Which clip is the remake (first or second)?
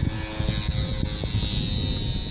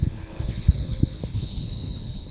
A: second